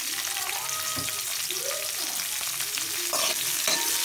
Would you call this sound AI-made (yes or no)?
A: no